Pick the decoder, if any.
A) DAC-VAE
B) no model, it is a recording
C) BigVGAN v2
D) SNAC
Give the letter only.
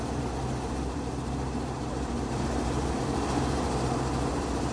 C